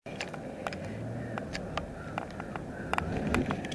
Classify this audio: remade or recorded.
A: recorded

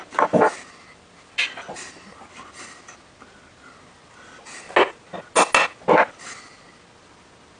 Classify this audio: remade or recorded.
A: recorded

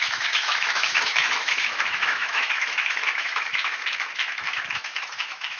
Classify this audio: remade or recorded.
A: remade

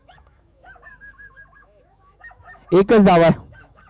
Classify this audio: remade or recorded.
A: remade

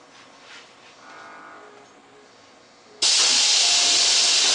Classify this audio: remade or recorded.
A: recorded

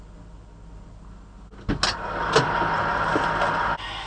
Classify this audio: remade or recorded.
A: recorded